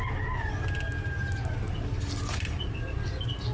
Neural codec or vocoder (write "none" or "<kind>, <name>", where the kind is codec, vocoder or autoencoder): none